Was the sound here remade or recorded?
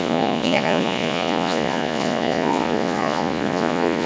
remade